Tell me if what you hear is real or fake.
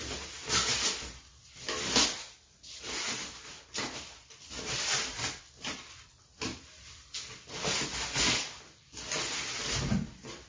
real